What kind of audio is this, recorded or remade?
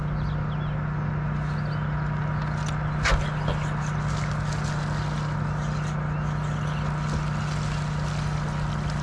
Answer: recorded